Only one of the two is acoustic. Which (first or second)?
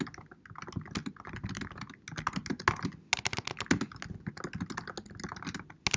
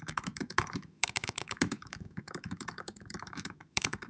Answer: first